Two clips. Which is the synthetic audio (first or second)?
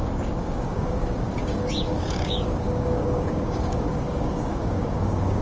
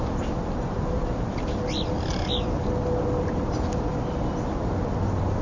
first